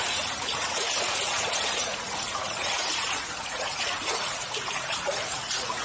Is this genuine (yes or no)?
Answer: no